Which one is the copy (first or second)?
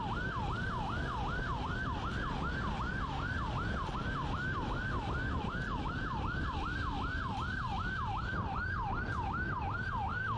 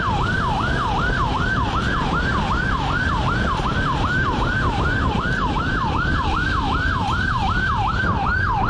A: second